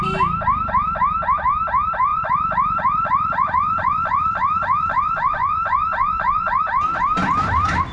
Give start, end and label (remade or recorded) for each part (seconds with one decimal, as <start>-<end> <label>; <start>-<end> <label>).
0.0-2.1 recorded; 2.1-6.6 remade; 6.6-7.9 recorded